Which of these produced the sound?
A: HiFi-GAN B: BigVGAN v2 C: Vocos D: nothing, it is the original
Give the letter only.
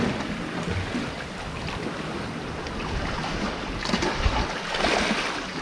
D